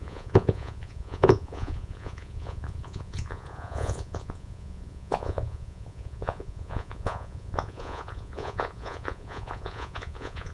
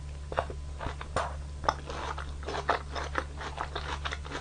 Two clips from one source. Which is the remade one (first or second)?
first